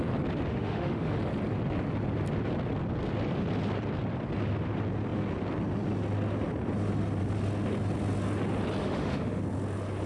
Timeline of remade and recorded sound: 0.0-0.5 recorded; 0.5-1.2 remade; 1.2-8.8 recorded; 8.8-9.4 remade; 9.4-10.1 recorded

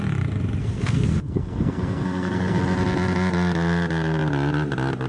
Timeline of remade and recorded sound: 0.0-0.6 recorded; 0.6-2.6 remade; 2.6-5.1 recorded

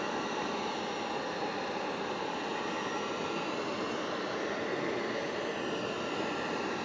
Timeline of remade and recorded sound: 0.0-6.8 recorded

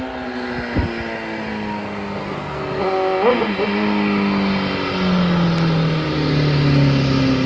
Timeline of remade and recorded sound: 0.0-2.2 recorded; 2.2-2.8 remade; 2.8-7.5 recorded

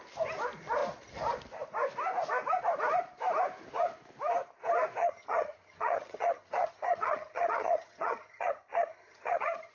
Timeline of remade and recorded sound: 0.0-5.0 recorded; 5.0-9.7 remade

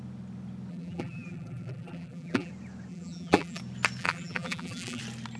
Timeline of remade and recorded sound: 0.0-0.7 recorded; 0.7-2.5 remade; 2.5-2.9 recorded; 2.9-3.6 remade; 3.6-4.0 recorded; 4.0-5.0 remade; 5.0-5.4 recorded

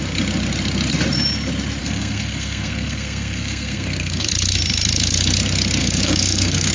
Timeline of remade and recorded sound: 0.0-1.8 recorded; 1.8-4.3 remade; 4.3-5.8 recorded; 5.8-6.7 remade

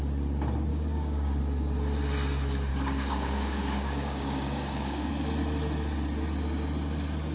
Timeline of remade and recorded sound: 0.0-0.7 recorded; 0.7-1.4 remade; 1.4-2.7 recorded; 2.7-5.1 remade; 5.1-7.3 recorded